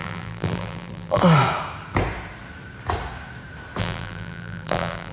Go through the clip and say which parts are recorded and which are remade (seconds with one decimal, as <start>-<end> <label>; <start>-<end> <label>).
0.0-1.2 remade; 1.2-3.8 recorded; 3.8-5.1 remade